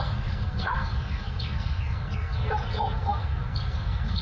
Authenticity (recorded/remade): remade